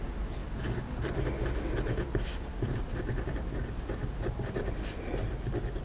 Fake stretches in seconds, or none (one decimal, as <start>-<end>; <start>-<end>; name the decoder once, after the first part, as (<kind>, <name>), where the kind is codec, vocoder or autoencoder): none